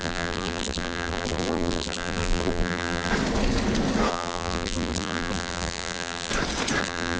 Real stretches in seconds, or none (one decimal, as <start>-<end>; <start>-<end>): 3.1-4.1; 6.3-6.8

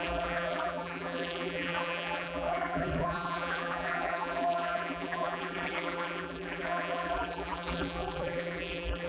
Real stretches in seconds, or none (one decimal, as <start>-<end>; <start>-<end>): none

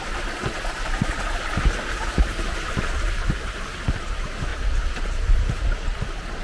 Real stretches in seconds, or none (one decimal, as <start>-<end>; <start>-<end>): 0.0-4.5; 5.6-6.4